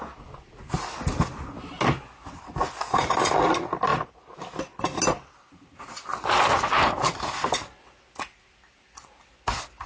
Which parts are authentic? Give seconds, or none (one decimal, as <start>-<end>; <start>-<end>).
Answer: 0.0-9.9